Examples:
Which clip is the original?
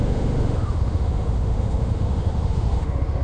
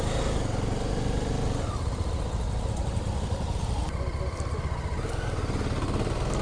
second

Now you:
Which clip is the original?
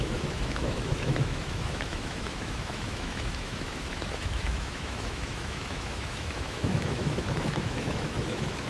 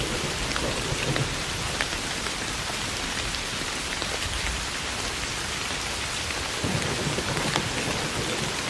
second